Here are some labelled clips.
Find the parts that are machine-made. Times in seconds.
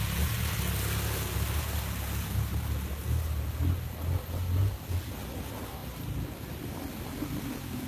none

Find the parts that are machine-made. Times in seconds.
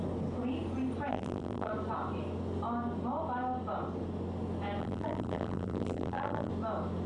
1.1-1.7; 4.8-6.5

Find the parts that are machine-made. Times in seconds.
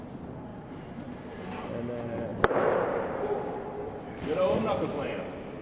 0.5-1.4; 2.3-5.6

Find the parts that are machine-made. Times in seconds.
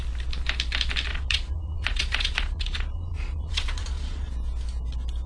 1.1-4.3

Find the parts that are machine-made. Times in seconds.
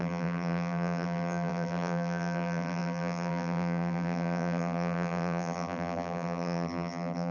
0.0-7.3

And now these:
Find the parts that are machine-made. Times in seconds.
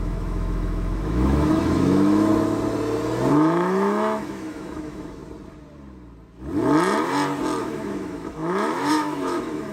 0.0-2.3; 3.3-5.2; 7.6-9.7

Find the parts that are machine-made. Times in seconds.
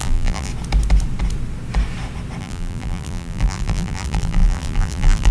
0.0-0.5; 2.4-5.3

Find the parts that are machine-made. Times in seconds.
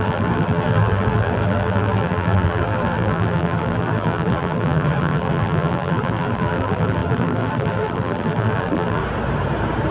0.0-9.0